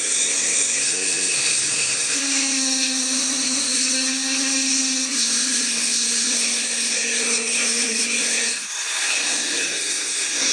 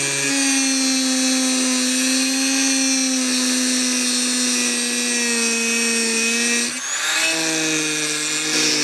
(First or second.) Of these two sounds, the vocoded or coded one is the first